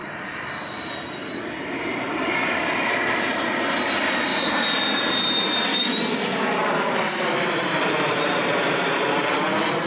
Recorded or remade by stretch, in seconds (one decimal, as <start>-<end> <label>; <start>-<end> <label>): 0.0-3.7 remade; 3.7-4.3 recorded; 4.3-5.1 remade; 5.1-7.7 recorded; 7.7-8.9 remade; 8.9-9.9 recorded